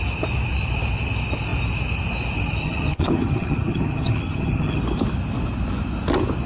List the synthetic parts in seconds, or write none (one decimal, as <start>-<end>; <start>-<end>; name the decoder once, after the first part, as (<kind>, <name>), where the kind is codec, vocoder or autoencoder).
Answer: 2.6-4.8 (vocoder, HiFi-GAN)